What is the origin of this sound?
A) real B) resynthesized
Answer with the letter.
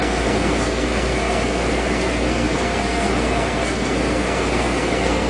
B